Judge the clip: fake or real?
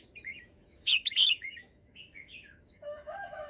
fake